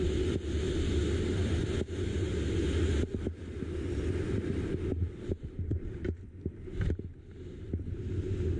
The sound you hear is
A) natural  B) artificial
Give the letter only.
A